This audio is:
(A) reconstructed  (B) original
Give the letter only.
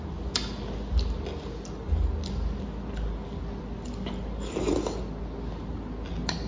B